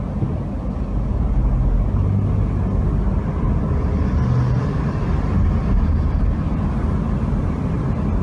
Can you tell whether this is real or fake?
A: real